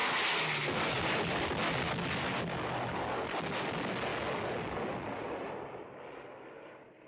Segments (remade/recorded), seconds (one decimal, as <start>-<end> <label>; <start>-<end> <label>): 0.0-7.1 recorded